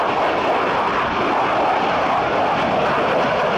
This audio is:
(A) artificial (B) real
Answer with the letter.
B